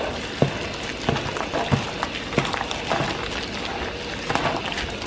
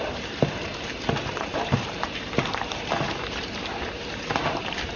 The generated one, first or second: second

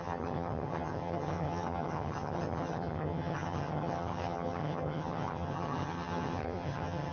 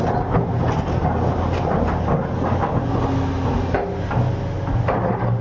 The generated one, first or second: first